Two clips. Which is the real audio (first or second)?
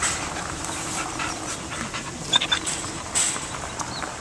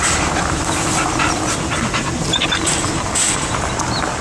second